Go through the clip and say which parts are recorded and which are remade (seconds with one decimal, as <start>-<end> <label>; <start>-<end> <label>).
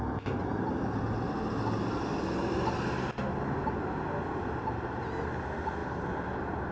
0.0-6.7 recorded